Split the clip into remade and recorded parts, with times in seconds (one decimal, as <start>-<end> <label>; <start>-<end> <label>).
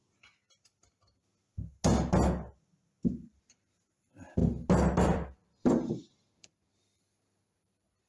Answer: 0.0-1.3 remade; 1.3-3.1 recorded; 3.1-4.4 remade; 4.4-5.0 recorded; 5.0-8.1 remade